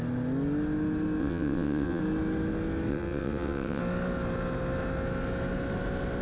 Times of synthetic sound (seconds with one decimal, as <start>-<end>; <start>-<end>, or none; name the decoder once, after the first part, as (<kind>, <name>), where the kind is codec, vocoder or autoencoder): 1.2-2.0 (vocoder, WaveNeXt); 2.9-3.8

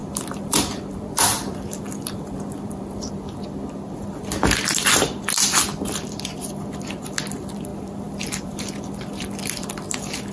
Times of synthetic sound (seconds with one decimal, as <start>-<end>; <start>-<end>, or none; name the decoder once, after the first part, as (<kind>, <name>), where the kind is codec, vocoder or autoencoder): 0.0-3.1 (vocoder, BigVGAN v2); 5.7-6.5; 7.7-9.7

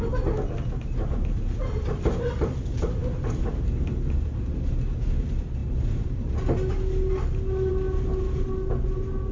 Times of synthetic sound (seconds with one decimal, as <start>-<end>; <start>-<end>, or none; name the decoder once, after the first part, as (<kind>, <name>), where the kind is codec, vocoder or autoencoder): none

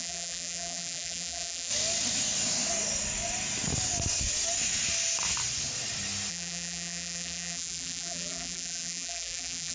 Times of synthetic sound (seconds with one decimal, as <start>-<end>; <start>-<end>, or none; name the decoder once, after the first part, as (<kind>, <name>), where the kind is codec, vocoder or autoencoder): 0.0-1.7 (vocoder, BigVGAN v2); 6.3-9.7

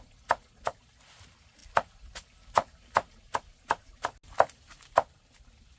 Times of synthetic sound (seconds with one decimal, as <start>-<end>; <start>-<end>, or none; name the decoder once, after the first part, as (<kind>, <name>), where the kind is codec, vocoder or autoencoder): none

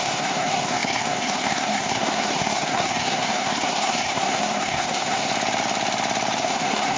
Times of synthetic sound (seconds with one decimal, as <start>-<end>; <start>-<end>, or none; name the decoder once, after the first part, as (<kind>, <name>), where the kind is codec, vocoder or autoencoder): 0.0-5.3 (codec, SNAC); 6.4-7.0

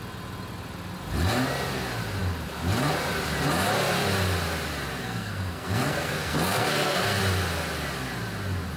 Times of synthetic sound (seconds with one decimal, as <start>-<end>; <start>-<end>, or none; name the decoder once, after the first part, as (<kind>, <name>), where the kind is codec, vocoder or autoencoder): 5.0-7.2 (codec, SNAC)